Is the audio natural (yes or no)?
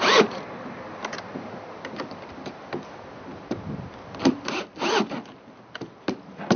yes